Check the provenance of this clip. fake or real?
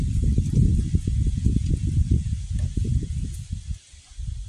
real